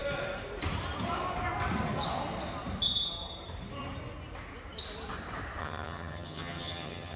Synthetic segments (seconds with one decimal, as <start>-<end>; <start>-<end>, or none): 5.6-7.2